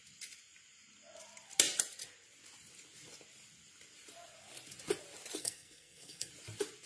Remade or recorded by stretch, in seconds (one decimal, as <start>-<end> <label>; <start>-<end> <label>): 0.0-5.4 recorded; 5.4-6.3 remade; 6.3-6.9 recorded

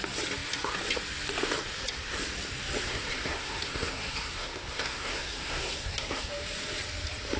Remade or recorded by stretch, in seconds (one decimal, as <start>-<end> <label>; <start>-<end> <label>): 0.0-2.8 recorded; 2.8-6.3 remade; 6.3-7.4 recorded

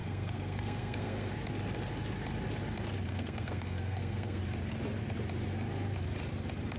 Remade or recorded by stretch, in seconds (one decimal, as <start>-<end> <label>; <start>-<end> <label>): 0.0-1.3 remade; 1.3-3.1 recorded; 3.1-4.4 remade; 4.4-6.8 recorded

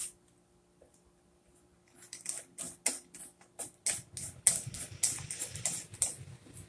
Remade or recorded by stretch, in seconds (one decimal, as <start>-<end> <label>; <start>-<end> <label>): 0.0-6.7 recorded

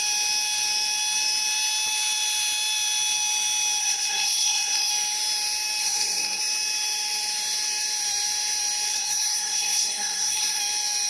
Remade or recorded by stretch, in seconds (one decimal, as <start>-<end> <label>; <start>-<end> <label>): 0.0-3.8 recorded; 3.8-4.9 remade; 4.9-5.8 recorded; 5.8-6.4 remade; 6.4-8.9 recorded; 8.9-10.6 remade; 10.6-11.1 recorded